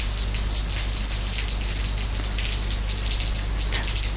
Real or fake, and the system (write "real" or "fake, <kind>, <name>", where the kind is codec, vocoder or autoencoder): real